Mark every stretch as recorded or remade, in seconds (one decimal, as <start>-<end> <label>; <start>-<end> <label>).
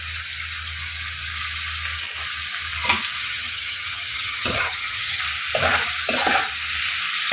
0.0-3.2 recorded; 3.2-5.2 remade; 5.2-7.3 recorded